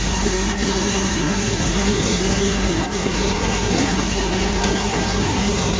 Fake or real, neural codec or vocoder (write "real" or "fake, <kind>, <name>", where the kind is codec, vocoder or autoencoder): fake, codec, SNAC